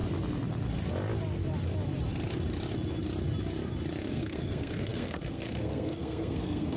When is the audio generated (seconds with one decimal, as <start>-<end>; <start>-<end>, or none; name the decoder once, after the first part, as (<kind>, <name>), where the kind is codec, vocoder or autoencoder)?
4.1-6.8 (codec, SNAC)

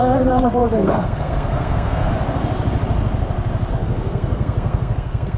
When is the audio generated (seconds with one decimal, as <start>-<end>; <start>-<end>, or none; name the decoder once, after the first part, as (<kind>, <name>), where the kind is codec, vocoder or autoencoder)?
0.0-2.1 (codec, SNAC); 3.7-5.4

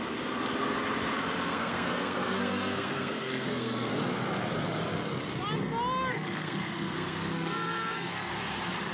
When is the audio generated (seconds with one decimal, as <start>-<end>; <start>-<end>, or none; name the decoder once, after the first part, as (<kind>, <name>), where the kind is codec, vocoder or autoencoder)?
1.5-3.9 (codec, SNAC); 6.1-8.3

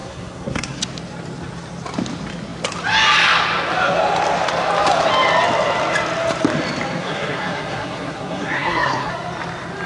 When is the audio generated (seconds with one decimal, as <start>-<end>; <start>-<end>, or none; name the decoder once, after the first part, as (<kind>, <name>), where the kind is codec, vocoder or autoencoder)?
0.0-0.8 (codec, SNAC); 7.0-9.1

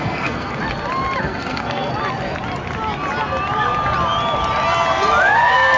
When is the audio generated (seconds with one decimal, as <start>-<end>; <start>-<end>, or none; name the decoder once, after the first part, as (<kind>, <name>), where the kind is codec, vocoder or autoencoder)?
0.0-0.6 (codec, SNAC); 1.2-1.9; 5.2-5.8

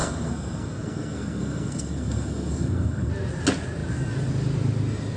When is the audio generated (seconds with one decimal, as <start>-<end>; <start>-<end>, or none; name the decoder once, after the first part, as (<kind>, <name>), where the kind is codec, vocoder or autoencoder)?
0.0-3.1 (codec, SNAC)